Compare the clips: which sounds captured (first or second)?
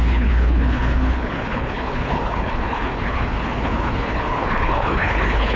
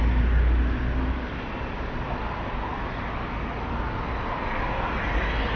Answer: second